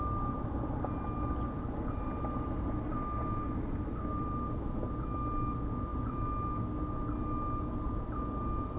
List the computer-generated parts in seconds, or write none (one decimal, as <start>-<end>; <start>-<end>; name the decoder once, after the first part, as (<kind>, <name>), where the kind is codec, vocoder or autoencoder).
none